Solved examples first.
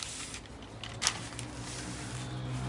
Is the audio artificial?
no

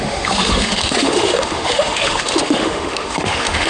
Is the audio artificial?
yes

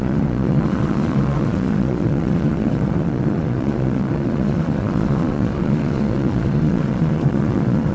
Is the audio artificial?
yes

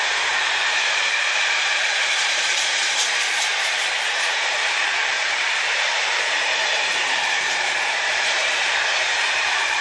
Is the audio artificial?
yes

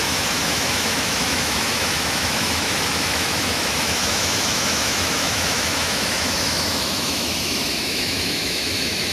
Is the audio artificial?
yes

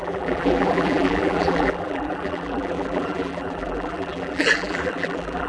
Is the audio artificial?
yes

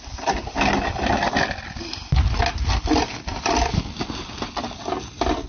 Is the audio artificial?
no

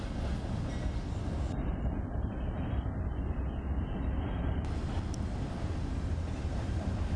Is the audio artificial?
no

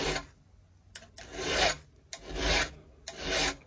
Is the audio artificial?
no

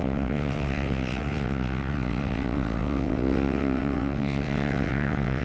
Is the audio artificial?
yes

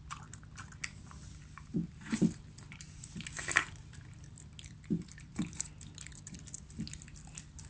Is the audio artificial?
no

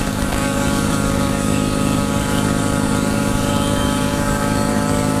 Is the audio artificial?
yes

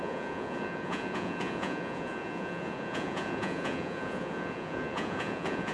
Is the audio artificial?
yes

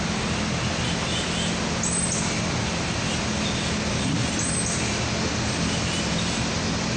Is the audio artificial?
no